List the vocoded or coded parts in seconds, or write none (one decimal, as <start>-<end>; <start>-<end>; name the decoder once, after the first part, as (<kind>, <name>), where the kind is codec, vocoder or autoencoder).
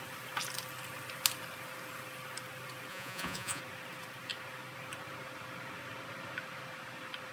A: 2.9-3.6 (vocoder, Vocos)